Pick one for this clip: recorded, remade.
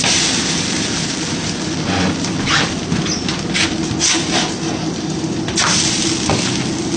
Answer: remade